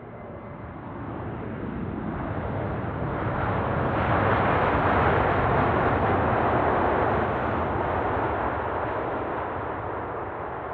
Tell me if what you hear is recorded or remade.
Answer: recorded